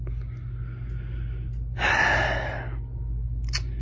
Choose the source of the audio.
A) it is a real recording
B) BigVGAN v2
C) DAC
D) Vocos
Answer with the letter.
A